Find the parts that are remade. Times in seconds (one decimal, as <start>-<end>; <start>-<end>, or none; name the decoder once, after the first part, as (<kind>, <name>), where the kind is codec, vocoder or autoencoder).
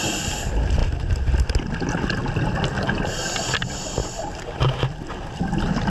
none